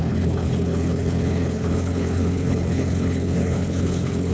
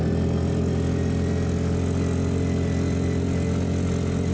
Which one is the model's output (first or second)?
first